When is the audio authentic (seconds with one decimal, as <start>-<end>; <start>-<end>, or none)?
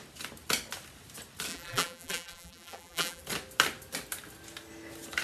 0.0-1.5; 3.2-5.2